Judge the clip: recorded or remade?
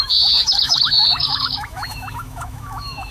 remade